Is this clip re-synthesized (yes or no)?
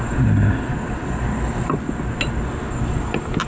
no